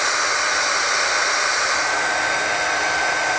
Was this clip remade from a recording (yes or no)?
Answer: no